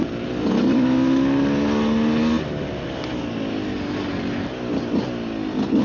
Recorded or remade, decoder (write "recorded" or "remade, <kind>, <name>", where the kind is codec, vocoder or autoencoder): recorded